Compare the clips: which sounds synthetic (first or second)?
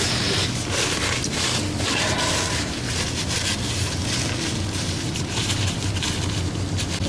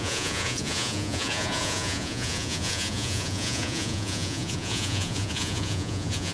second